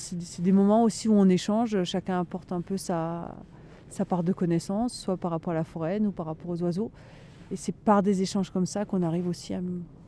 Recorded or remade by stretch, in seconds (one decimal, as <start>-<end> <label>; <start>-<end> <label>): 0.0-10.1 recorded